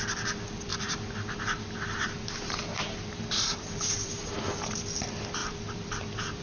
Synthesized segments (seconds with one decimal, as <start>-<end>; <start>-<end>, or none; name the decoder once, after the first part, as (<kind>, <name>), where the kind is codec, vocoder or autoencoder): 0.7-4.5 (vocoder, BigVGAN v2); 5.4-6.4